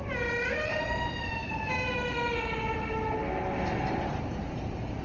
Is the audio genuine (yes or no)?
yes